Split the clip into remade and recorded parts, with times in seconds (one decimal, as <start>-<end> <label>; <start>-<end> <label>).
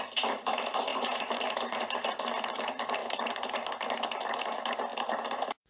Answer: 0.0-0.9 recorded; 0.9-2.1 remade; 2.1-3.0 recorded; 3.0-3.6 remade; 3.6-5.7 recorded